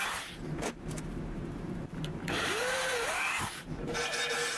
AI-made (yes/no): yes